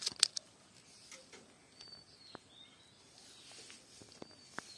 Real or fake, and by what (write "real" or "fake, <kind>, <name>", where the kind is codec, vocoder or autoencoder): real